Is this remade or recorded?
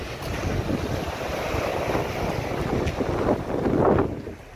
recorded